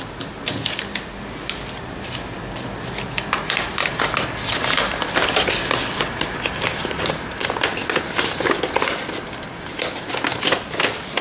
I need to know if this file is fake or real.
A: real